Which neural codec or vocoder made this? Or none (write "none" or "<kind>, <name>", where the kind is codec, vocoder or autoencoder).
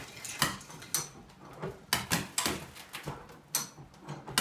none